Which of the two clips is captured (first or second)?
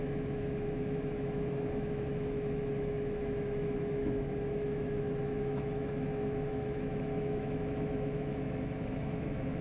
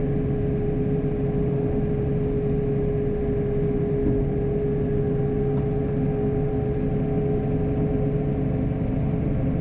second